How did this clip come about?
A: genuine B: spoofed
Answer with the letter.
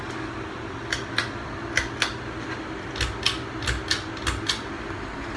A